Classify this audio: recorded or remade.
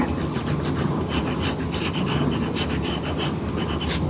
recorded